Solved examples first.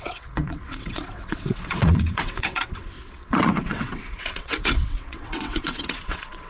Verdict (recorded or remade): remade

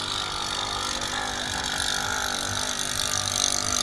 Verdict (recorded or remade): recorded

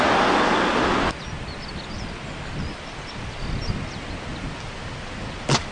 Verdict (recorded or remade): recorded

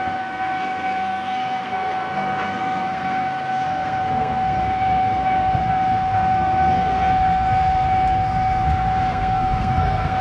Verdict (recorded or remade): remade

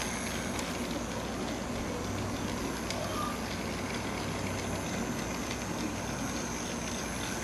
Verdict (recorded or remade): recorded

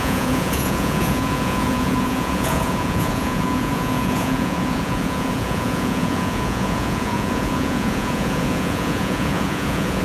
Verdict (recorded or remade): remade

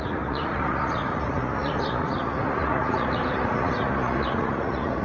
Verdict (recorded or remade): remade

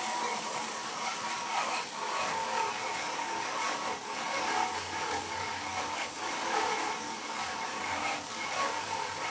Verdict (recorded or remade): remade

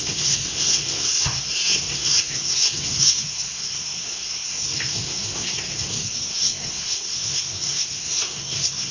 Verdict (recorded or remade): remade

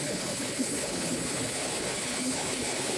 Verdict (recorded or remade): remade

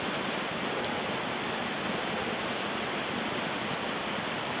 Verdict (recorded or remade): recorded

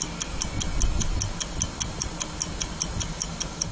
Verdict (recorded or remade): recorded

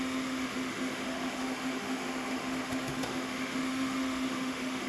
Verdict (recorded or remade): remade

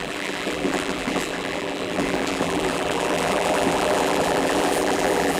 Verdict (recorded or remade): remade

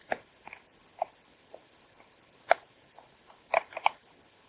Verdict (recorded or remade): remade